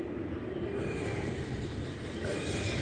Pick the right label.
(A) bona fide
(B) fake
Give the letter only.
A